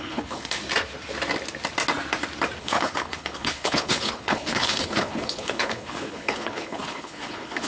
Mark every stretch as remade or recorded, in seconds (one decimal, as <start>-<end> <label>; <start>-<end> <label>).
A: 0.0-0.6 remade; 0.6-2.6 recorded; 2.6-7.7 remade